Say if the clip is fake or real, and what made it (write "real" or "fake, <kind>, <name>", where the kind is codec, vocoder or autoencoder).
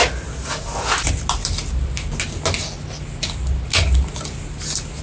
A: real